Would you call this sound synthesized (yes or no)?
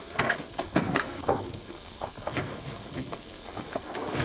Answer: yes